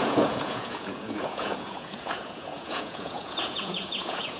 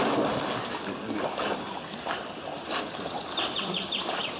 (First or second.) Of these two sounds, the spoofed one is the first